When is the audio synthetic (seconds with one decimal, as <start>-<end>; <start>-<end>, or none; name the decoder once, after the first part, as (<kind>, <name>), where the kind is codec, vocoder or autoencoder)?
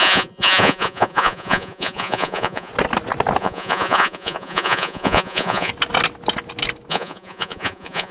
0.0-2.7 (vocoder, Vocos); 3.4-5.7; 6.9-8.1